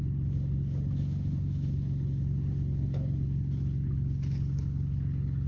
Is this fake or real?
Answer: fake